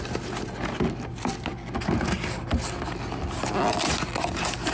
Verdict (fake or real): real